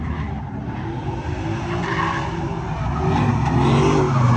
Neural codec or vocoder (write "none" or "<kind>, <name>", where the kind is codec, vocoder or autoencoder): none